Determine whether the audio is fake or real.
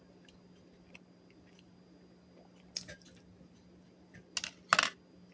real